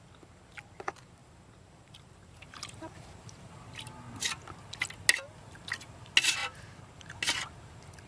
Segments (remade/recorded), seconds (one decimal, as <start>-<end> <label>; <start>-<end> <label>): 0.0-1.2 recorded; 1.2-3.9 remade; 3.9-8.1 recorded